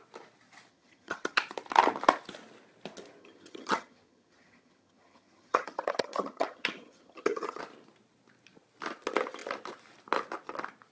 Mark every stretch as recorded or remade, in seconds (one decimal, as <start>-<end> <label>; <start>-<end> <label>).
0.0-0.7 recorded; 0.7-1.4 remade; 1.4-3.2 recorded; 3.2-7.6 remade; 7.6-10.9 recorded

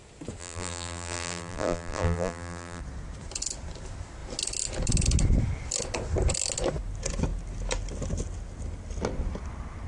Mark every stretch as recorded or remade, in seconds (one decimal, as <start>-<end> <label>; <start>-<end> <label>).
0.0-0.4 recorded; 0.4-2.8 remade; 2.8-9.9 recorded

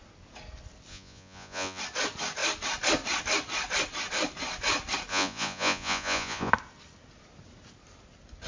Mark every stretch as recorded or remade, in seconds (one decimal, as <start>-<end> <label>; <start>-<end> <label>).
0.0-0.9 recorded; 0.9-1.8 remade; 1.8-5.1 recorded; 5.1-6.5 remade; 6.5-8.5 recorded

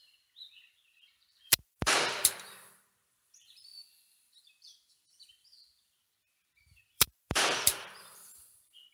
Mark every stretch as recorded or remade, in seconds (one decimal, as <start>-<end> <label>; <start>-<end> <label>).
0.0-8.9 remade

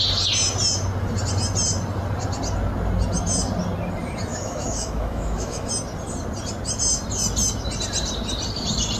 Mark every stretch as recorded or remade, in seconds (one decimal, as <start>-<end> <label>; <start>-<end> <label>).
0.0-4.3 recorded; 4.3-5.7 remade; 5.7-9.0 recorded

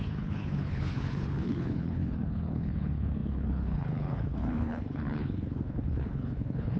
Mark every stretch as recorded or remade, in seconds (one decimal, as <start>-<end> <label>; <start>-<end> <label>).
0.0-6.8 remade

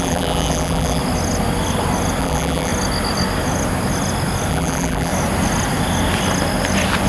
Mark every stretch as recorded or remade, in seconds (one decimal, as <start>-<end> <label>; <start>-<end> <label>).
0.0-1.0 remade; 1.0-2.2 recorded; 2.2-2.7 remade; 2.7-4.5 recorded; 4.5-5.1 remade; 5.1-7.1 recorded

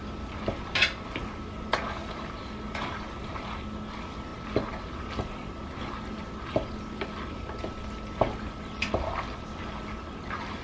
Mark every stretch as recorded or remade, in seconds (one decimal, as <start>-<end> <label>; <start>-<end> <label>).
0.0-10.6 recorded